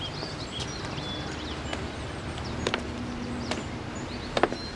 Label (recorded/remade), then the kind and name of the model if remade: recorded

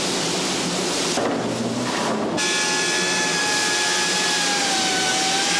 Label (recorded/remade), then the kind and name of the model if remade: recorded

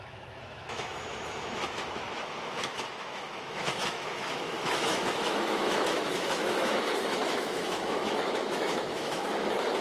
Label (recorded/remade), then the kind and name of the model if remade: remade, autoencoder, DAC-VAE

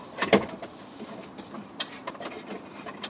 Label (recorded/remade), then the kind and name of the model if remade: remade, vocoder, BigVGAN v2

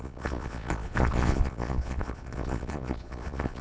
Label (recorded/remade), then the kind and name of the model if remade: remade, vocoder, Vocos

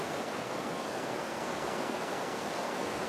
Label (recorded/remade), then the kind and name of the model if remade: remade, codec, SNAC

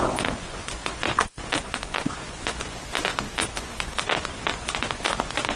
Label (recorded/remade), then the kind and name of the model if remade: remade, vocoder, Vocos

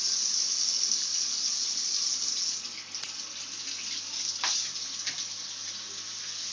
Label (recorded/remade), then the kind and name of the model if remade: recorded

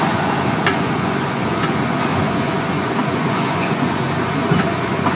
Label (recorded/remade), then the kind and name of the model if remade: remade, vocoder, Vocos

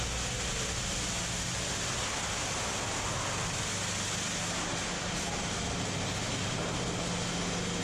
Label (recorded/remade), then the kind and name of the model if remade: recorded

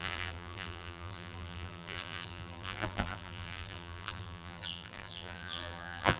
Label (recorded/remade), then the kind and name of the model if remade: remade, vocoder, BigVGAN v2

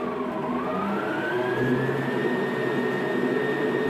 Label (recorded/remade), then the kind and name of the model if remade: recorded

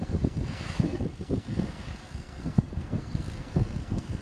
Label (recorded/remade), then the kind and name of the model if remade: remade, codec, SNAC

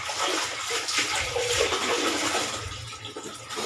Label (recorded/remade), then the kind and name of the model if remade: recorded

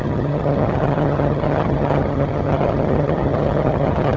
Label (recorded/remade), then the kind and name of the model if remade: remade, vocoder, HiFi-GAN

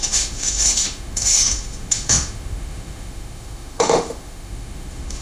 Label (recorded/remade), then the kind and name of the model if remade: remade, autoencoder, DAC-VAE